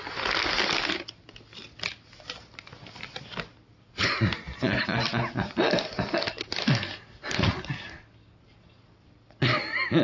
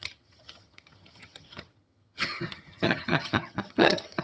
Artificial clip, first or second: second